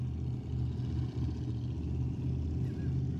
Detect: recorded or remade recorded